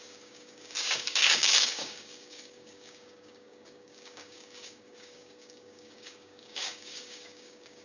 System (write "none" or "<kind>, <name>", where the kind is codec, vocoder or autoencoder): codec, DAC